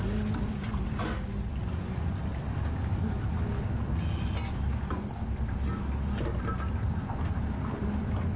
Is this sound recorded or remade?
recorded